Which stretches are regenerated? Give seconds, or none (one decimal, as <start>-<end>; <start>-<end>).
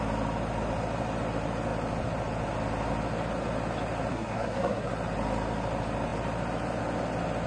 4.1-4.9